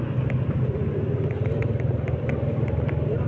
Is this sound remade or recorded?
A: recorded